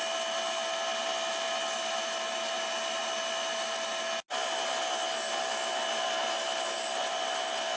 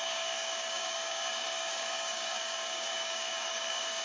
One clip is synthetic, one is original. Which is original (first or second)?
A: first